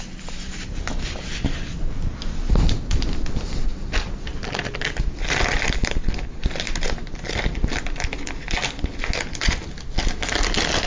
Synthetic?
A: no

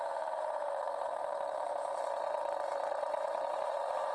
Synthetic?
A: yes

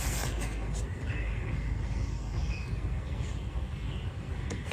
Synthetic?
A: yes